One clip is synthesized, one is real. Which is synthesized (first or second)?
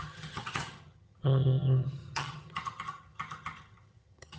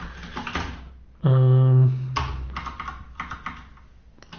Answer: first